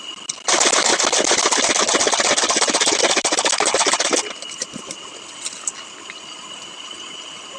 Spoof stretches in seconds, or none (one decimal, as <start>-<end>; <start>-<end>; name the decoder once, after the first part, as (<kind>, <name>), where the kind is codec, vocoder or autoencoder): none